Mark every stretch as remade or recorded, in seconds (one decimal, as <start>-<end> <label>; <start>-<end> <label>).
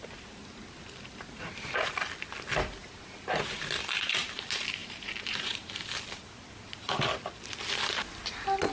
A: 0.0-4.8 recorded; 4.8-5.9 remade; 5.9-8.7 recorded